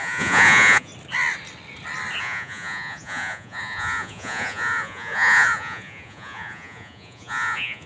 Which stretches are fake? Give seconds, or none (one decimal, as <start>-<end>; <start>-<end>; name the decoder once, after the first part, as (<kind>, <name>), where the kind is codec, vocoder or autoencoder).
0.0-0.9 (vocoder, Vocos); 2.2-7.9